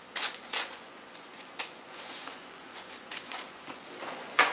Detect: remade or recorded remade